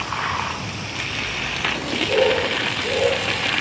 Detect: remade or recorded remade